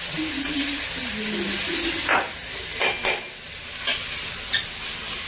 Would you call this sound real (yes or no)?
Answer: yes